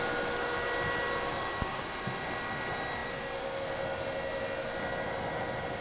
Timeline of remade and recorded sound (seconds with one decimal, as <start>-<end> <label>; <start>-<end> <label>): 0.0-5.8 recorded